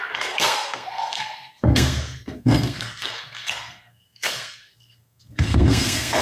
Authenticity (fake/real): fake